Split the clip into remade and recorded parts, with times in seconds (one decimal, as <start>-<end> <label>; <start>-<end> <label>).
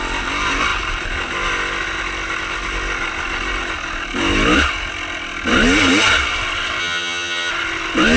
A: 0.0-6.8 recorded; 6.8-7.5 remade; 7.5-8.2 recorded